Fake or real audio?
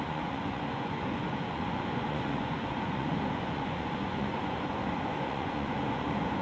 fake